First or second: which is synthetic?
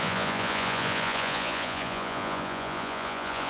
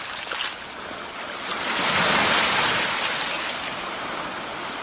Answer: first